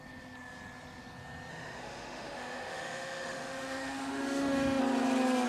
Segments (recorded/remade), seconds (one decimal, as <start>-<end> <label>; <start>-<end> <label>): 0.0-1.5 recorded; 1.5-4.8 remade; 4.8-5.5 recorded